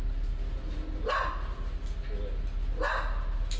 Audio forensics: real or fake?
real